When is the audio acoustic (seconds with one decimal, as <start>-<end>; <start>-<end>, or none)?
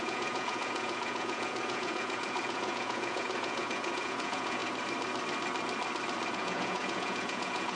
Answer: 4.6-6.3